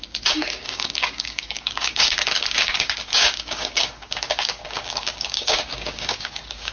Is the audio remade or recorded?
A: remade